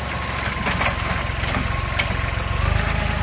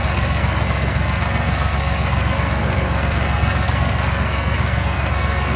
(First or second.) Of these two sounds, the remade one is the second